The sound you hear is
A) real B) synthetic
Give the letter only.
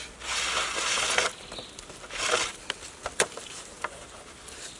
A